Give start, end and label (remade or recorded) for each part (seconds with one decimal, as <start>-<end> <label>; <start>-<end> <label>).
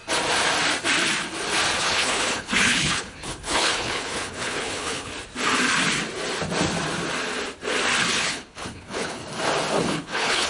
0.0-1.8 recorded; 1.8-5.1 remade; 5.1-8.1 recorded; 8.1-9.2 remade; 9.2-9.8 recorded; 9.8-10.5 remade